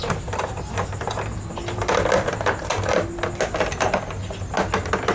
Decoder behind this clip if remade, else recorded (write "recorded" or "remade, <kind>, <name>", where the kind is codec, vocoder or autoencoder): recorded